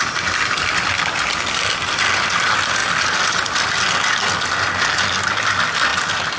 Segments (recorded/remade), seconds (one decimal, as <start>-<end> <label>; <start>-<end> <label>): 0.0-6.4 recorded